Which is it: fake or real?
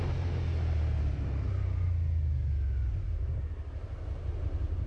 real